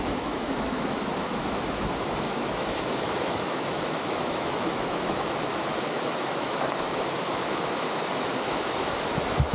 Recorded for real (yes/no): no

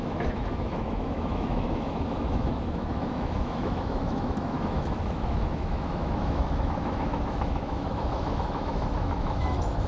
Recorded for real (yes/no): no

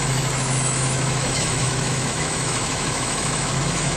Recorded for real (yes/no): no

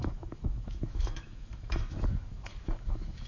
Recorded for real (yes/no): no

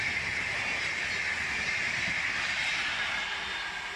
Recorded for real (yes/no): yes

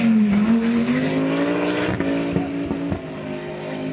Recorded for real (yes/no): yes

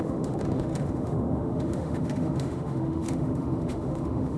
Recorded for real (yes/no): no